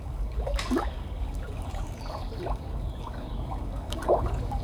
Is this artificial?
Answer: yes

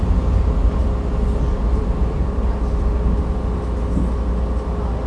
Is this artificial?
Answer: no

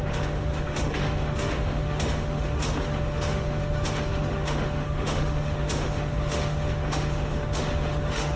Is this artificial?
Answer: yes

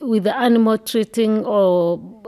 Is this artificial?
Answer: no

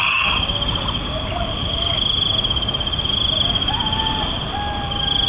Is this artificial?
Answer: yes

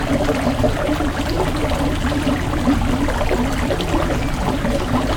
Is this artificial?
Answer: no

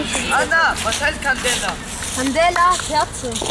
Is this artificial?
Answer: no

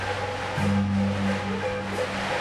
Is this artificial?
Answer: no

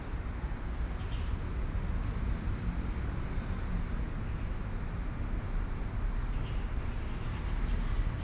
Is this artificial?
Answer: no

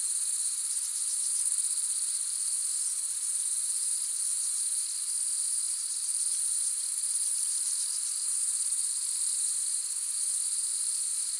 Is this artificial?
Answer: yes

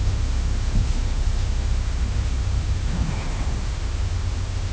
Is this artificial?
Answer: yes